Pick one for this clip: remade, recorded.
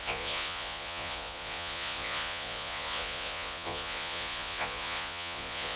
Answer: remade